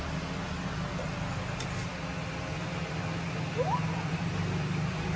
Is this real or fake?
real